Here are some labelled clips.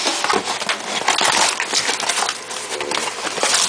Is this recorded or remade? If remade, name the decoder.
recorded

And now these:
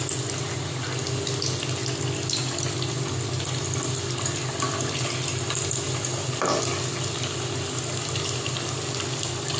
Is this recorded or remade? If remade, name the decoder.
recorded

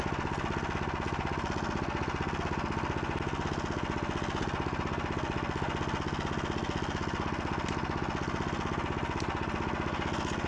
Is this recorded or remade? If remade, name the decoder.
recorded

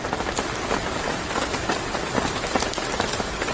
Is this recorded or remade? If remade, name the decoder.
recorded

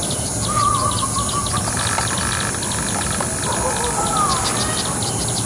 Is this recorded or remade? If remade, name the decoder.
recorded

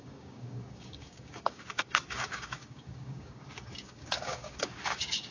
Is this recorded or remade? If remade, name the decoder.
remade, codec, DAC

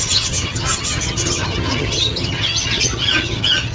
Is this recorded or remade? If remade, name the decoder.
remade, vocoder, HiFi-GAN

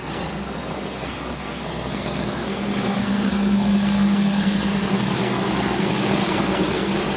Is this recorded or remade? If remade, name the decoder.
remade, codec, SNAC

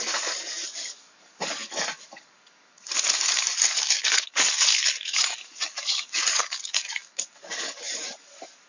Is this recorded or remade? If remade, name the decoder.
remade, codec, DAC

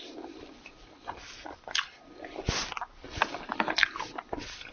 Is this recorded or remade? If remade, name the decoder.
recorded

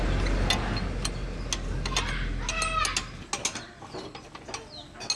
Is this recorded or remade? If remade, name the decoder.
recorded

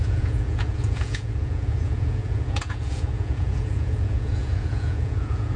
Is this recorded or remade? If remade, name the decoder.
remade, vocoder, Vocos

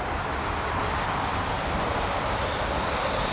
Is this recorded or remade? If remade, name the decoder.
recorded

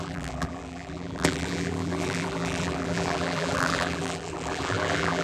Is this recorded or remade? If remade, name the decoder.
remade, vocoder, BigVGAN v2